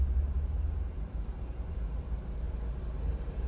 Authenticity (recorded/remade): recorded